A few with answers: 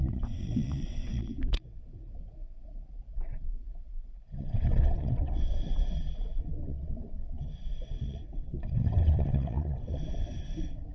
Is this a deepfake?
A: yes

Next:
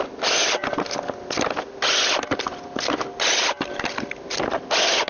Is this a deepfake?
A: no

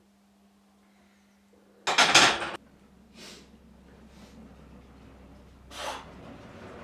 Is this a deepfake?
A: no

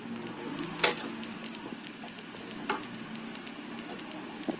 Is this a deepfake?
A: no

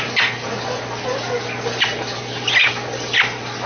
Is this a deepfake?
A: no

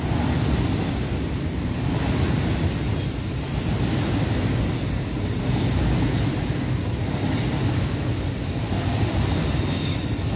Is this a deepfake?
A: no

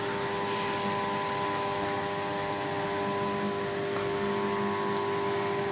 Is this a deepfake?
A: no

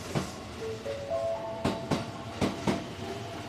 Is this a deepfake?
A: no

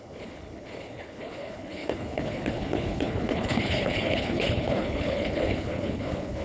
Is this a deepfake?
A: yes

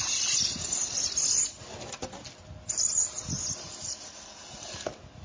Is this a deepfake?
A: no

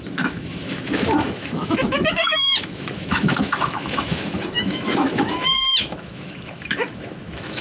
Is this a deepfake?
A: yes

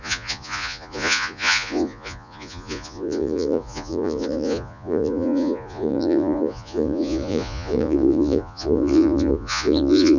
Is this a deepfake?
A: yes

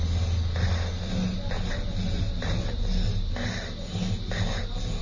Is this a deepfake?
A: no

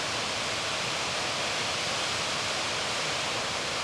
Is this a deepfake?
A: no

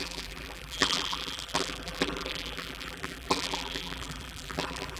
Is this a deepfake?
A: yes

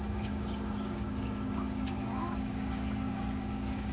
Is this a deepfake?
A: yes